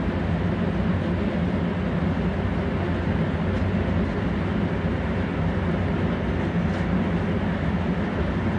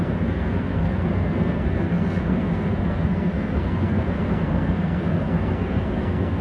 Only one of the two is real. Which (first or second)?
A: first